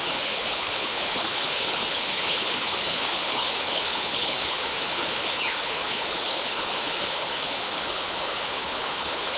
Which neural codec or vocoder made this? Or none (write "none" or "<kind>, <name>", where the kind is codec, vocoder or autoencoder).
codec, HILCodec